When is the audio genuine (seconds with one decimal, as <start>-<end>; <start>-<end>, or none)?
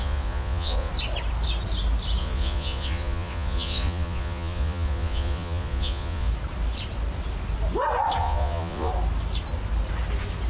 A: 0.9-2.2; 6.3-8.2; 8.9-10.5